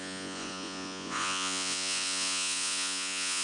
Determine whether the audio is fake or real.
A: fake